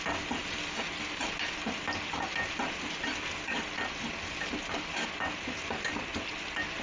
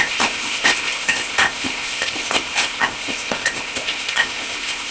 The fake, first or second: second